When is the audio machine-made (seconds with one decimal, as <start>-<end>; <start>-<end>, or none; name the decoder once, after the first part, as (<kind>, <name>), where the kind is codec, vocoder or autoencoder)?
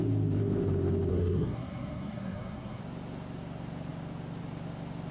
1.1-2.8 (codec, SNAC)